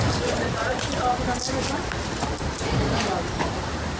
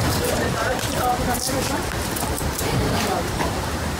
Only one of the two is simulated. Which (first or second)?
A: second